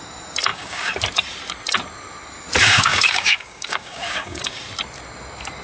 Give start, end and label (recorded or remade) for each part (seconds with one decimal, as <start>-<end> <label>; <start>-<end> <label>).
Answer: 0.0-0.5 recorded; 0.5-1.0 remade; 1.0-2.6 recorded; 2.6-4.6 remade; 4.6-5.6 recorded